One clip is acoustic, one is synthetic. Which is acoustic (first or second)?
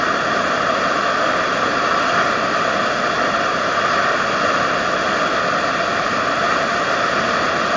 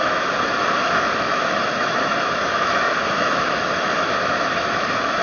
first